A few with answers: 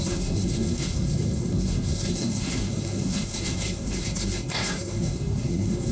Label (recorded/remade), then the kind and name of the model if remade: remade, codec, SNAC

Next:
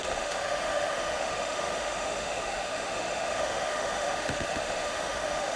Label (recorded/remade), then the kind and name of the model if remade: remade, autoencoder, DAC-VAE